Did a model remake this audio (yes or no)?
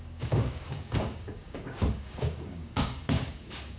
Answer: yes